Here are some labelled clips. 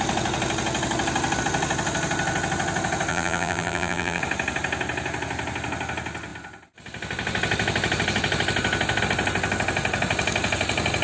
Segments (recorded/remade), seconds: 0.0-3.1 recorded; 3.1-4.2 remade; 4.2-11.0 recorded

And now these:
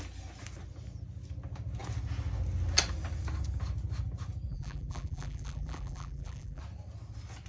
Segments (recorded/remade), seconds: 0.0-4.5 recorded; 4.5-6.6 remade; 6.6-7.5 recorded

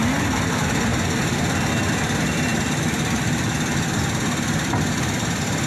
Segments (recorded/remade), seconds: 0.0-2.5 recorded; 2.5-4.0 remade; 4.0-5.7 recorded

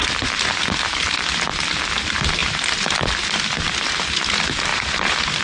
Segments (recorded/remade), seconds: 0.0-0.5 remade; 0.5-4.7 recorded; 4.7-5.4 remade

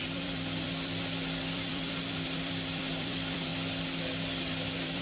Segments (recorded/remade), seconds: 0.0-3.5 remade; 3.5-4.4 recorded; 4.4-5.0 remade

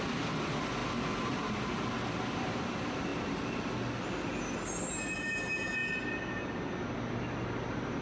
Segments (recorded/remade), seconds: 0.0-8.0 recorded